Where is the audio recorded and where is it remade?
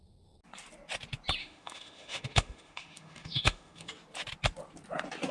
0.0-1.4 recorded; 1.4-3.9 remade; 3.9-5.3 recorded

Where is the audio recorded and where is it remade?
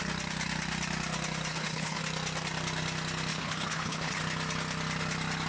0.0-1.5 recorded; 1.5-2.0 remade; 2.0-3.3 recorded; 3.3-4.2 remade; 4.2-5.5 recorded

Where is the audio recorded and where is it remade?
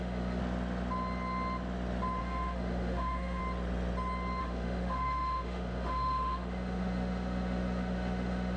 0.0-0.4 remade; 0.4-2.2 recorded; 2.2-3.4 remade; 3.4-4.4 recorded; 4.4-8.6 remade